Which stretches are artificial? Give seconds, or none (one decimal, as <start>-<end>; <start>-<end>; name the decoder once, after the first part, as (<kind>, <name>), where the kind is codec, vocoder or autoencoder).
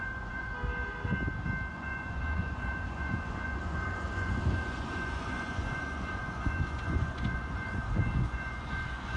0.0-0.5 (vocoder, Vocos); 1.7-9.2